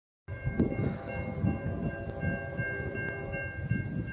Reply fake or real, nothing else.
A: real